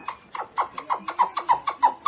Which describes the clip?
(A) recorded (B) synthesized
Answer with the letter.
B